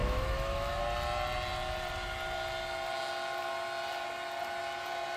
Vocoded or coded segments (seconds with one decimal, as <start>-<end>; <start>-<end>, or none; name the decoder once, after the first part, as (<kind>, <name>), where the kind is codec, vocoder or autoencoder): 0.0-0.8 (autoencoder, DAC-VAE)